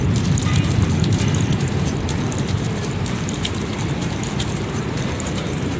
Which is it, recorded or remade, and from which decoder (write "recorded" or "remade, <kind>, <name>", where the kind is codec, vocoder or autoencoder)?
remade, vocoder, BigVGAN v2